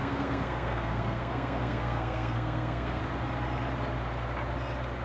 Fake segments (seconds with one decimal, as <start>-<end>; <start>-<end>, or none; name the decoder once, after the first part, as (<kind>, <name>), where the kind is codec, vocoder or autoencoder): 0.0-3.0 (codec, SNAC)